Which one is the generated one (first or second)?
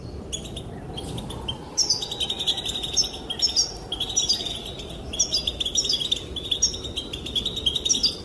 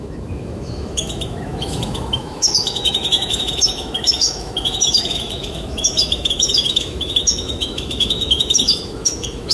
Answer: second